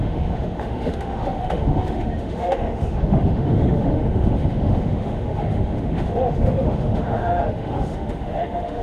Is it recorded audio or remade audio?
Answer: remade